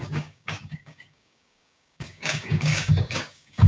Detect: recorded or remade remade